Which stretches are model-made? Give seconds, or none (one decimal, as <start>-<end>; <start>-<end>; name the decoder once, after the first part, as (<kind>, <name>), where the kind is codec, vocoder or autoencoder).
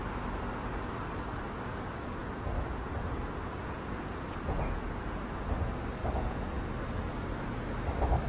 2.2-5.0 (vocoder, Vocos); 6.0-6.6